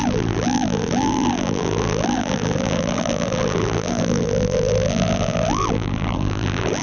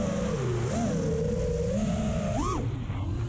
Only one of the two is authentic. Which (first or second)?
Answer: second